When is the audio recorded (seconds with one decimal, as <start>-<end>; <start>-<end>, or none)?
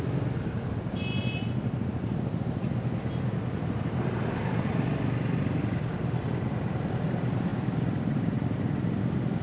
0.0-9.4